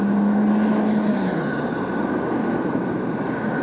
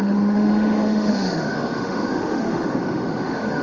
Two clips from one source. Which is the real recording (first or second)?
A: first